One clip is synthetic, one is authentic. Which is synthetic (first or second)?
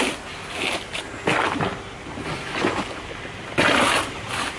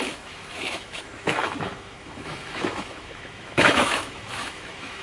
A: second